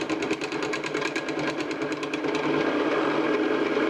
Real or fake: fake